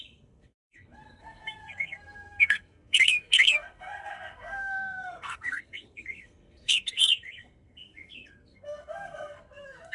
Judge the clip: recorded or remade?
remade